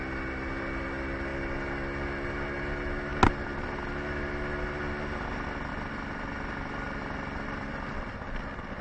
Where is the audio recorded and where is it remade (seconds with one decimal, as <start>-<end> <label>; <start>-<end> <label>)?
0.0-8.8 recorded